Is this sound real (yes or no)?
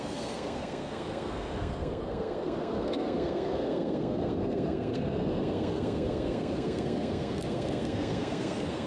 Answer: no